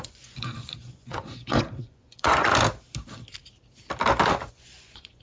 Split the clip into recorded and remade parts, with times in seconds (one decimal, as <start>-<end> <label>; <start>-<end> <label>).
0.0-2.5 remade; 2.5-4.5 recorded; 4.5-5.2 remade